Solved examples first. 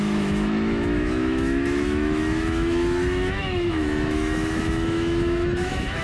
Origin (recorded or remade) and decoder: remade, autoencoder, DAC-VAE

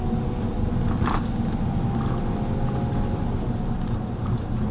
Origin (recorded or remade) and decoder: recorded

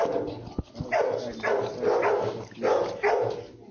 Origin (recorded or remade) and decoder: recorded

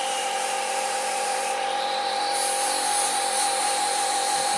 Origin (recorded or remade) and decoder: remade, vocoder, BigVGAN v2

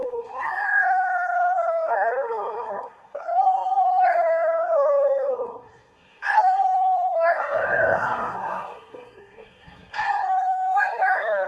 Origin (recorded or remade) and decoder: remade, codec, SNAC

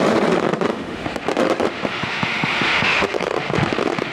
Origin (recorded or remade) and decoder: remade, autoencoder, DAC-VAE